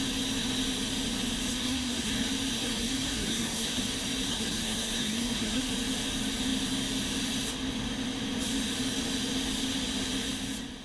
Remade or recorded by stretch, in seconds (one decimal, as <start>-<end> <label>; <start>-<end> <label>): 0.0-1.5 recorded; 1.5-2.1 remade; 2.1-2.6 recorded; 2.6-3.8 remade; 3.8-4.3 recorded; 4.3-5.7 remade; 5.7-10.8 recorded